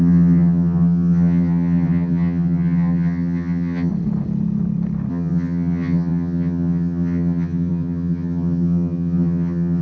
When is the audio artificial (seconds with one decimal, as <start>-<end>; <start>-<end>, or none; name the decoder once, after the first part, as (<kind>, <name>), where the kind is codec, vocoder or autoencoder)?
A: 0.0-3.9 (vocoder, HiFi-GAN); 5.1-9.8